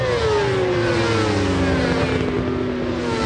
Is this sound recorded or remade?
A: recorded